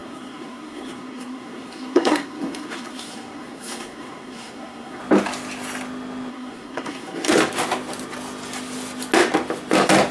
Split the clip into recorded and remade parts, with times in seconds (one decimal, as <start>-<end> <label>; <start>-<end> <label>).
0.0-5.0 remade; 5.0-6.3 recorded; 6.3-7.3 remade; 7.3-10.1 recorded

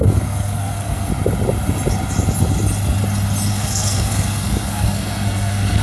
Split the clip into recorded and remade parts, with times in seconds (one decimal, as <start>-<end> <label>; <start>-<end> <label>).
0.0-1.1 remade; 1.1-3.5 recorded; 3.5-5.8 remade

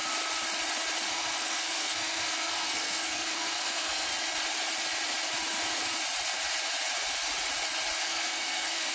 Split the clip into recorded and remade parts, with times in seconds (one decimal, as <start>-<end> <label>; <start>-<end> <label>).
0.0-1.1 recorded; 1.1-4.1 remade; 4.1-8.0 recorded; 8.0-8.9 remade

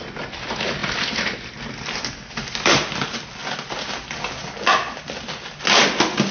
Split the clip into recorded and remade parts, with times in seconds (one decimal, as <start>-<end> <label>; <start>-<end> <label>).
0.0-6.3 recorded

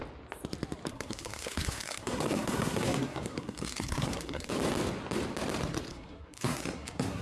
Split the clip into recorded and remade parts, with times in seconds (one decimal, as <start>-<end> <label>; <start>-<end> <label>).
0.0-0.9 recorded; 0.9-4.5 remade; 4.5-5.9 recorded; 5.9-7.2 remade

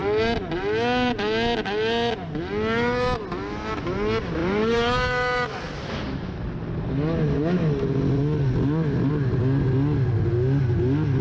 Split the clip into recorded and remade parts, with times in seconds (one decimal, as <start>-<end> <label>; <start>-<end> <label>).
0.0-11.2 recorded